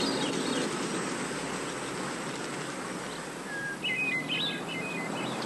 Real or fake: real